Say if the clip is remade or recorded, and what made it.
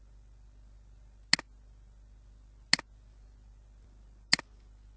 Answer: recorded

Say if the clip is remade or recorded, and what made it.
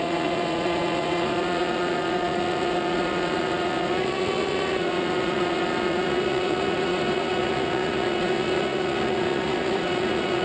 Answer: remade, vocoder, Vocos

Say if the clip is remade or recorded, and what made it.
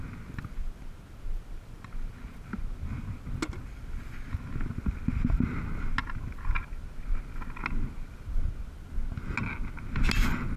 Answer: recorded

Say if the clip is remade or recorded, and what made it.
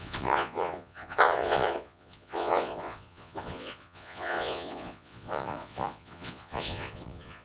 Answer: remade, vocoder, Vocos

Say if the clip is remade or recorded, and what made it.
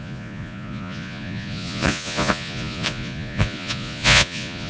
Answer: remade, vocoder, Vocos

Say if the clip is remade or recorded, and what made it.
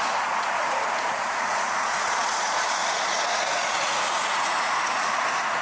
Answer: remade, vocoder, Vocos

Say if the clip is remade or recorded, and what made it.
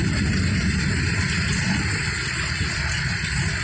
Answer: recorded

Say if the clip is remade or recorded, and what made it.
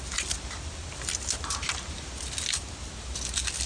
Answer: recorded